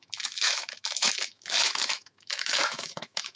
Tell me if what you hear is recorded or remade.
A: remade